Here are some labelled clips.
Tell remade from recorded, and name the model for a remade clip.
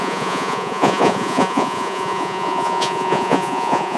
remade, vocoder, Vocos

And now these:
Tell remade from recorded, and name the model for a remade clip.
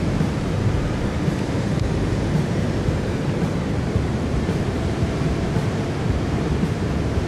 remade, vocoder, BigVGAN v2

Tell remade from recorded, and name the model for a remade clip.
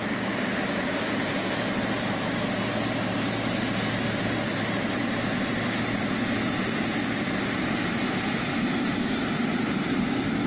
recorded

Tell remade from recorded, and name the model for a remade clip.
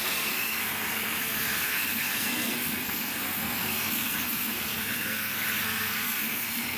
remade, codec, SNAC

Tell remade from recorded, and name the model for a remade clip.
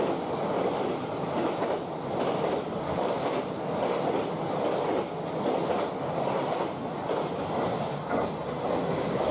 recorded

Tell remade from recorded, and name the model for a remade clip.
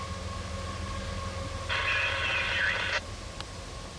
recorded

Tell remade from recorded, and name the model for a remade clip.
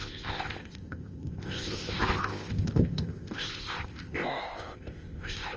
remade, codec, ZipCodec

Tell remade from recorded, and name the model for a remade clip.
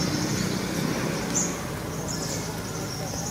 recorded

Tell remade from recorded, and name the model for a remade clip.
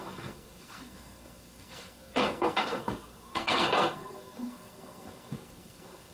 remade, codec, SNAC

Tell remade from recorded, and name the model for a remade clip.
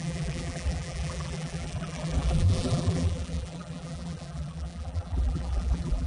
remade, vocoder, BigVGAN v2